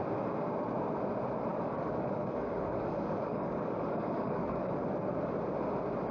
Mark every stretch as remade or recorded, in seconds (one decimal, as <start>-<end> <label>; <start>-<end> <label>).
0.0-1.5 recorded; 1.5-5.2 remade; 5.2-6.1 recorded